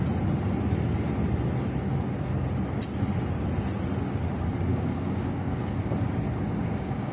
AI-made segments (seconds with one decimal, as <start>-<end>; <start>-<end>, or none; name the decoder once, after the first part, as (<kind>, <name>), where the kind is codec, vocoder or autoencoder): 4.7-5.8 (codec, DAC); 6.6-7.1